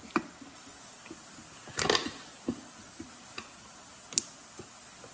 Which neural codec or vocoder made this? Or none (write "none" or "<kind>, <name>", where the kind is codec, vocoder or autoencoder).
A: none